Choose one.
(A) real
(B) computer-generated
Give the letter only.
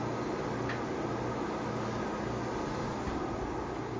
A